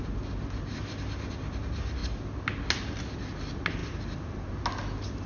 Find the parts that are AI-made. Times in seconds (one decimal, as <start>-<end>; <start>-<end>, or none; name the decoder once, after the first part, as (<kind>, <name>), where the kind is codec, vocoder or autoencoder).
3.8-4.5 (vocoder, BigVGAN v2)